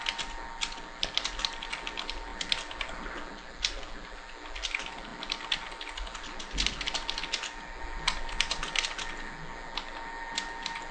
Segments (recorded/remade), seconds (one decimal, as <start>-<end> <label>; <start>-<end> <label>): 0.0-10.9 recorded